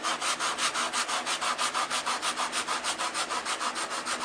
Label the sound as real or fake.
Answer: real